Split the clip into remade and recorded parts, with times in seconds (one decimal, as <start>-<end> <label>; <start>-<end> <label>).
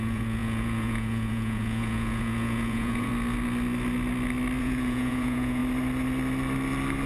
0.0-3.1 remade; 3.1-4.6 recorded; 4.6-5.6 remade; 5.6-7.1 recorded